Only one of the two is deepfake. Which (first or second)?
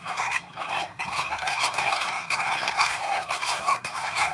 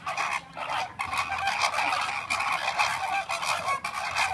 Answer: first